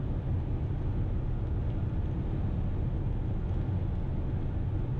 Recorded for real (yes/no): yes